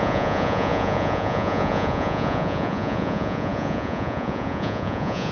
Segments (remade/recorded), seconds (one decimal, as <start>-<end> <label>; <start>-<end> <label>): 0.0-5.3 remade